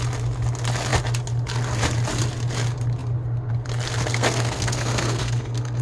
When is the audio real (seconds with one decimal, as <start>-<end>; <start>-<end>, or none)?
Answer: 0.0-4.1